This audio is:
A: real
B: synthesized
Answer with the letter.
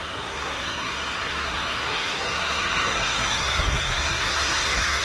B